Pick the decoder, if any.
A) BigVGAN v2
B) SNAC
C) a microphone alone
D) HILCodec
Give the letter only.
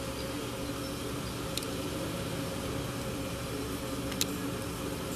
C